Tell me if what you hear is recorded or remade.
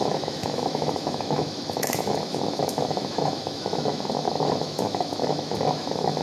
remade